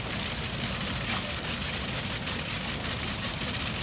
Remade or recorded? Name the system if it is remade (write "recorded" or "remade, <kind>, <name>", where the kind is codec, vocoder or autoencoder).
recorded